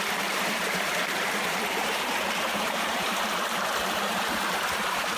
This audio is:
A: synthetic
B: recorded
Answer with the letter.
A